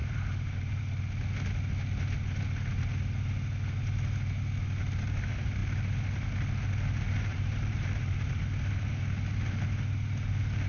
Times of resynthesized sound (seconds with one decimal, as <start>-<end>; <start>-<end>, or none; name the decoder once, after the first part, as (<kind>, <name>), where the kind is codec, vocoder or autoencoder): 0.0-0.8 (vocoder, BigVGAN v2); 7.3-8.3

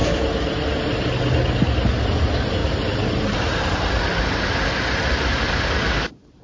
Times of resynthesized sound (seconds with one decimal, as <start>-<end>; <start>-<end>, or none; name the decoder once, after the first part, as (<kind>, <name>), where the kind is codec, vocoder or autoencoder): none